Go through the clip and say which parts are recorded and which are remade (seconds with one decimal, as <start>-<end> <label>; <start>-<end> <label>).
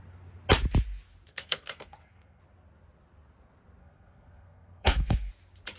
0.0-1.3 recorded; 1.3-2.4 remade; 2.4-3.8 recorded; 3.8-5.3 remade; 5.3-5.8 recorded